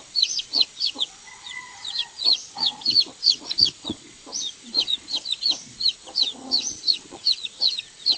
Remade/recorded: remade